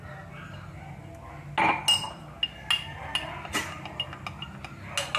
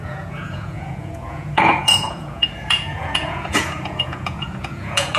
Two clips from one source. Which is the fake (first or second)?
second